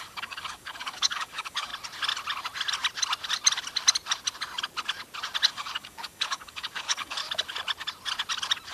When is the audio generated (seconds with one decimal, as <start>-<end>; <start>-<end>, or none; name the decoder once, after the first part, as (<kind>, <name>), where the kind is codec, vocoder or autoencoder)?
0.0-1.7 (codec, DAC); 5.5-7.2